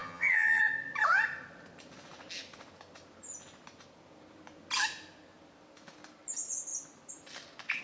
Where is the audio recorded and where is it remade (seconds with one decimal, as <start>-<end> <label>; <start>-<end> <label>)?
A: 0.0-0.6 remade; 0.6-7.8 recorded

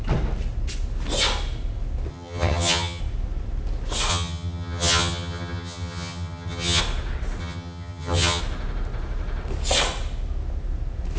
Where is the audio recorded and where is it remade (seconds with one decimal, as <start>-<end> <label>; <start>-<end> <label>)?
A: 0.0-2.1 recorded; 2.1-3.0 remade; 3.0-4.1 recorded; 4.1-6.8 remade; 6.8-7.4 recorded; 7.4-8.4 remade; 8.4-11.2 recorded

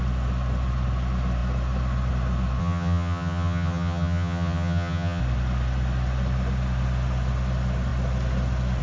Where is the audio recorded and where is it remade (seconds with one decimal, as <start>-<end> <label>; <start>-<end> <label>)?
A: 0.0-2.6 recorded; 2.6-5.2 remade; 5.2-8.8 recorded